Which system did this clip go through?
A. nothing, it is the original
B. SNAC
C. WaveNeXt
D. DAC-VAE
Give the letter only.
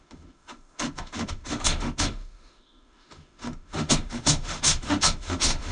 D